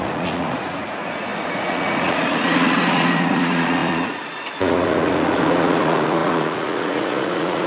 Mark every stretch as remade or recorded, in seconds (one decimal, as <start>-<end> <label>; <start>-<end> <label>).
0.0-7.7 remade